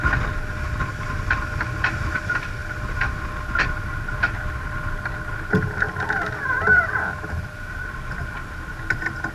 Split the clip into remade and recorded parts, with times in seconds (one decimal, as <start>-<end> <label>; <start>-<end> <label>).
0.0-9.3 recorded